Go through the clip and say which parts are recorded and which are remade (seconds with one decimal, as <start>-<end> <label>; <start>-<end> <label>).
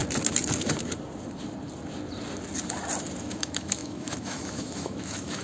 0.0-3.2 recorded; 3.2-5.4 remade